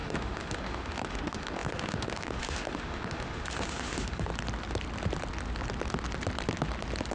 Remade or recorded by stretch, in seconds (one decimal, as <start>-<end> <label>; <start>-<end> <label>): 0.0-4.3 remade; 4.3-7.1 recorded